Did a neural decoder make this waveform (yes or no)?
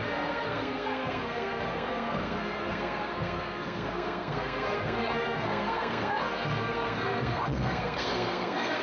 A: yes